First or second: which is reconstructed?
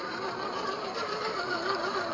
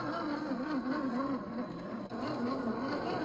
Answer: first